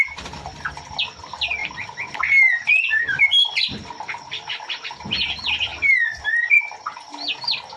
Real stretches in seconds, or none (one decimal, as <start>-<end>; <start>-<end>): 0.0-7.8